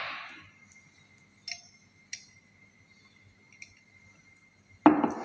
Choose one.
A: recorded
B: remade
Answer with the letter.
A